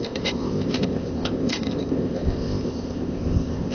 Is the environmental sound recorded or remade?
remade